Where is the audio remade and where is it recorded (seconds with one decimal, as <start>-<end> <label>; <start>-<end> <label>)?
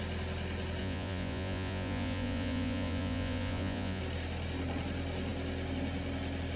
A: 0.0-0.8 recorded; 0.8-4.0 remade; 4.0-6.6 recorded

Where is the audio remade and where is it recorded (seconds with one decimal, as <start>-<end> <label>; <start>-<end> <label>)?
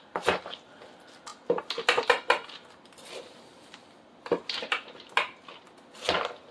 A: 0.0-6.5 recorded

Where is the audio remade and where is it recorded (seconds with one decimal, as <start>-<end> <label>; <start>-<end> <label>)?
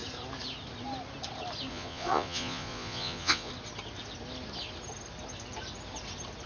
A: 0.0-1.7 recorded; 1.7-3.5 remade; 3.5-6.5 recorded